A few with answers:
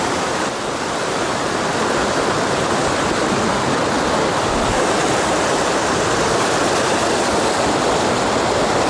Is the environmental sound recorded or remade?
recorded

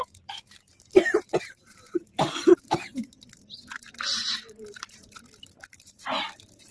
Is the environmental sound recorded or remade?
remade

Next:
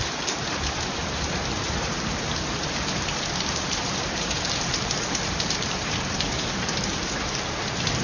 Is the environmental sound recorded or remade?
remade